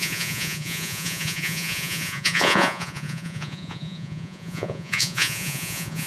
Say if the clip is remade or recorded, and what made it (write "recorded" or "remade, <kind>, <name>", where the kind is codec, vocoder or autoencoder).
remade, vocoder, Vocos